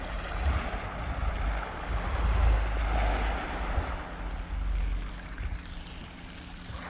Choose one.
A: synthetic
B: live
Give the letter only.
B